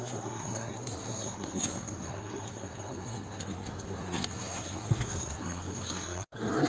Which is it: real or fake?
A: fake